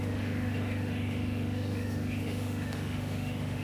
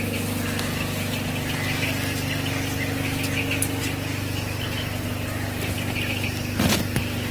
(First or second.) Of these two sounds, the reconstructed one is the first